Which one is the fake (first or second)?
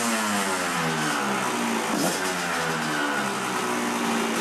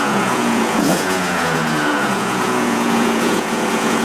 second